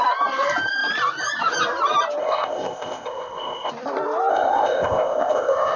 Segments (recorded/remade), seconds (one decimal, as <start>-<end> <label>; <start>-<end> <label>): 0.0-2.2 recorded; 2.2-3.7 remade; 3.7-4.3 recorded; 4.3-5.8 remade